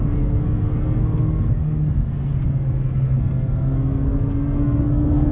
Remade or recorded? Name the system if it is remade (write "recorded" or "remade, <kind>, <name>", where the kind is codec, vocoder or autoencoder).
remade, codec, SNAC